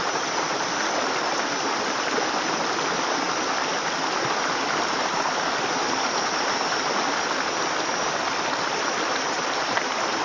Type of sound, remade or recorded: recorded